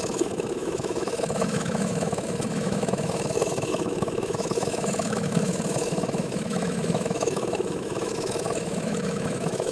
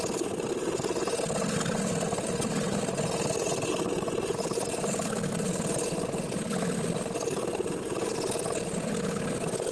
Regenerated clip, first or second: first